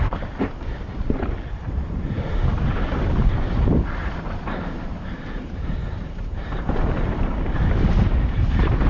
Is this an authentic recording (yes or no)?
no